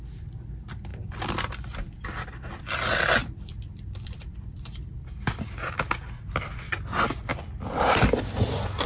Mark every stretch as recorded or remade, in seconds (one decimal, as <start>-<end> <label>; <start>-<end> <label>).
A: 0.0-0.9 recorded; 0.9-2.6 remade; 2.6-3.2 recorded; 3.2-5.7 remade; 5.7-7.3 recorded; 7.3-8.2 remade; 8.2-8.9 recorded